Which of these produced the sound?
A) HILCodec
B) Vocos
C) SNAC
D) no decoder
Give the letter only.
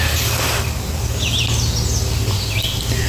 D